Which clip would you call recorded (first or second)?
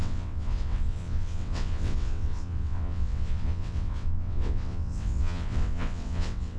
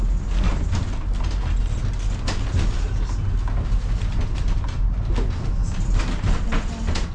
second